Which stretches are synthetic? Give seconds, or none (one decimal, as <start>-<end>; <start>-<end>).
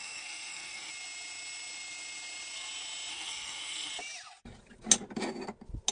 0.0-0.9; 3.1-3.9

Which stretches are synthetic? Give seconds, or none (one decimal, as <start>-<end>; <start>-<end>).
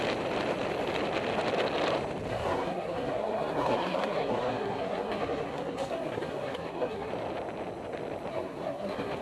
2.3-7.1; 8.3-9.2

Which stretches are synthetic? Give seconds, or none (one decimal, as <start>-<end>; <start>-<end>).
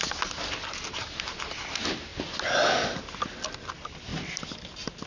none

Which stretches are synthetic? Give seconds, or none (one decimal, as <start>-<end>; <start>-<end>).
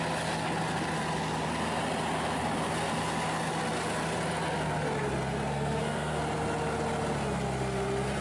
5.5-6.2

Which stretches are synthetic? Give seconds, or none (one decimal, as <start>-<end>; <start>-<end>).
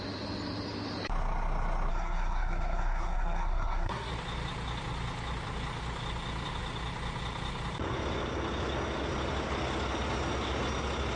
1.9-4.1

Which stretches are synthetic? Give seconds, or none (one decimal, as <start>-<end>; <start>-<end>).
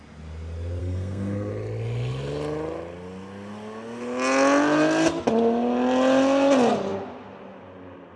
0.8-1.5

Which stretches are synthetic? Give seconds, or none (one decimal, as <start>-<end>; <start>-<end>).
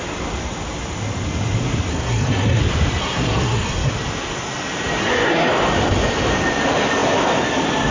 1.9-2.6; 3.0-3.9; 5.0-5.5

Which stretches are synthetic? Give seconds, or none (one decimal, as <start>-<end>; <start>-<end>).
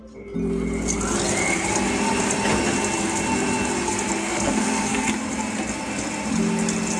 4.2-5.1